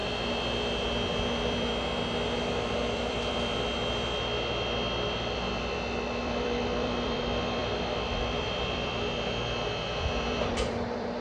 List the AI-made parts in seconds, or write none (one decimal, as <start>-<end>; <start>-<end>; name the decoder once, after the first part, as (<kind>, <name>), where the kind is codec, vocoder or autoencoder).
0.0-11.2 (vocoder, BigVGAN v2)